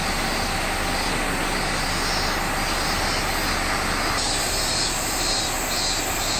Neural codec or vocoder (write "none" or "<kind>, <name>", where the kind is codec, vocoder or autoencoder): none